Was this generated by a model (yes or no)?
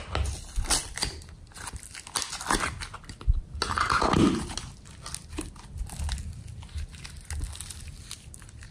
no